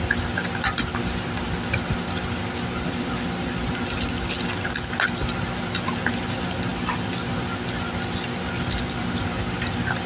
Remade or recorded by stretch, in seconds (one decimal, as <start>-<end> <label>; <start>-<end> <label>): 0.0-10.1 recorded